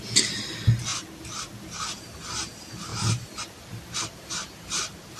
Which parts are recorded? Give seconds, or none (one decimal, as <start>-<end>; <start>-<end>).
0.0-2.9